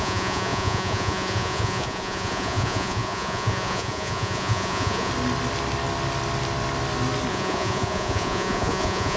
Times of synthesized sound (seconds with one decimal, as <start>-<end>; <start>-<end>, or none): 0.0-5.1; 7.3-9.2